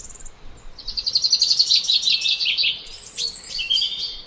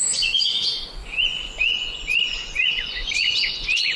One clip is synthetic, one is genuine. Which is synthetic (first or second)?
second